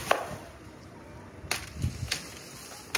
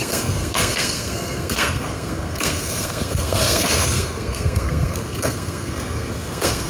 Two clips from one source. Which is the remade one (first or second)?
second